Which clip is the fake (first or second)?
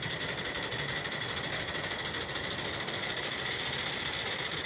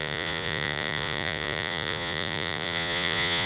second